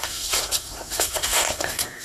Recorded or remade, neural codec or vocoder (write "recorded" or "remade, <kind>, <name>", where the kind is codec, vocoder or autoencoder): remade, codec, SNAC